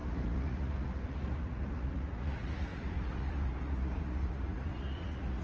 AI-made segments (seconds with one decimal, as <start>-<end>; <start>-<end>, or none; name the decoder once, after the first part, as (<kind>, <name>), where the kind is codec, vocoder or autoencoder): 0.0-5.4 (vocoder, Vocos)